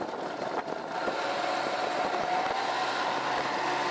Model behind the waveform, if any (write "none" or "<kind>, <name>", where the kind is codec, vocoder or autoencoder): none